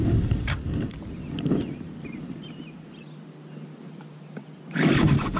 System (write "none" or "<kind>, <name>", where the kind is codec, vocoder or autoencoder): none